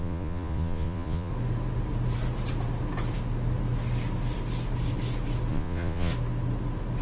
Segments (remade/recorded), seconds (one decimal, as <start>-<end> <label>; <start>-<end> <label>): 0.0-1.3 remade; 1.3-5.5 recorded; 5.5-6.1 remade; 6.1-7.0 recorded